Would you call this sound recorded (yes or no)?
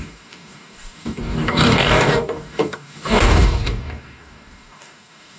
no